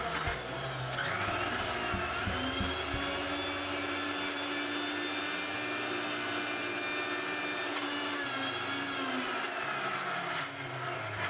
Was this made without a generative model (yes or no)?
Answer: yes